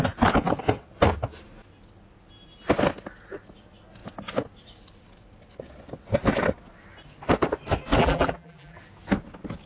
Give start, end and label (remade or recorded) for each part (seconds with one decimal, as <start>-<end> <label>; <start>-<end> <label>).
0.0-8.0 recorded; 8.0-8.8 remade; 8.8-9.7 recorded